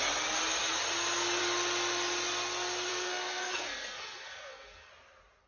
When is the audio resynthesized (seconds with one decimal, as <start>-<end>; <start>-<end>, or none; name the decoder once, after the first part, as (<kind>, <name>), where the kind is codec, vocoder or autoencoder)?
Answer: 2.9-4.9 (codec, SNAC)

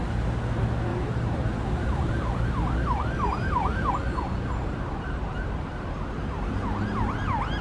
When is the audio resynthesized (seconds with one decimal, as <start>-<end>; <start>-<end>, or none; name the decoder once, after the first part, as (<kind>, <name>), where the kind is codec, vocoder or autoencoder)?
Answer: 0.9-3.9 (vocoder, BigVGAN v2)

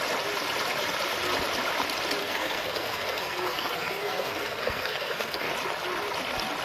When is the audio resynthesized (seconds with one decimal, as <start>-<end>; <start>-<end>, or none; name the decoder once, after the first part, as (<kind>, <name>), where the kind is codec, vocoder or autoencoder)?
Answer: 2.2-5.5 (codec, SNAC)